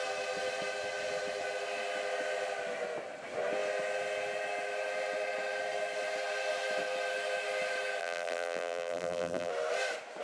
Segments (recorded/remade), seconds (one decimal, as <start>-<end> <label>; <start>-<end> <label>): 0.0-8.0 recorded; 8.0-9.5 remade; 9.5-10.2 recorded